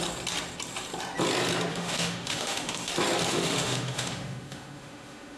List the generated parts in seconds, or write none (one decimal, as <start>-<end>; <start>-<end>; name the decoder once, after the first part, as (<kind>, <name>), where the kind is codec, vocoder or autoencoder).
1.7-2.9 (autoencoder, DAC-VAE); 3.3-5.4

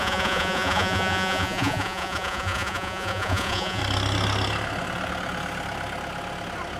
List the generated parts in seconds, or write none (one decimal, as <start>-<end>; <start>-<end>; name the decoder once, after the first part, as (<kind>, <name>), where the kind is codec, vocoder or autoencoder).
0.0-3.8 (vocoder, Vocos)